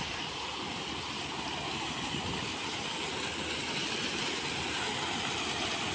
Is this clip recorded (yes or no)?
yes